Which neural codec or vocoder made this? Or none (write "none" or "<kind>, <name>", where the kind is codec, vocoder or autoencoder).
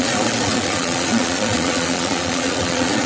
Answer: vocoder, Vocos